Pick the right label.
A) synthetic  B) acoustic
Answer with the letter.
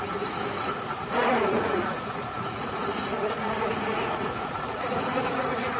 A